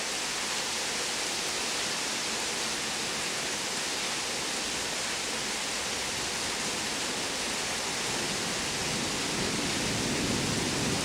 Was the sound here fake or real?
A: real